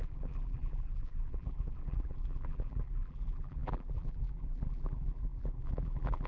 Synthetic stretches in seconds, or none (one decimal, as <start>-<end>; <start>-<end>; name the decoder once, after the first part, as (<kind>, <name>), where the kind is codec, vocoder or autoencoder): 0.0-6.3 (vocoder, BigVGAN v2)